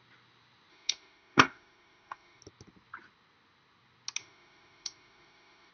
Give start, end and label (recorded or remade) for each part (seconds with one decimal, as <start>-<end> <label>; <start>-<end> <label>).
0.0-0.7 recorded; 0.7-2.4 remade; 2.4-4.2 recorded; 4.2-5.7 remade